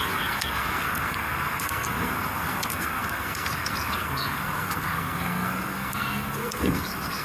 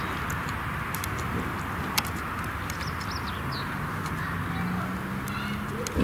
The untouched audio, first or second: second